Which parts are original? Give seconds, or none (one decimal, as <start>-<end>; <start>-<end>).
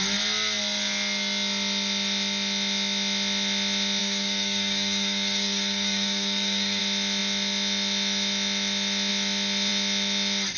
0.0-4.0; 6.8-10.6